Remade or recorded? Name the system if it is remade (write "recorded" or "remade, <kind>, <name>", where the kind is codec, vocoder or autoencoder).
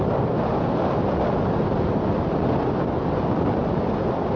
recorded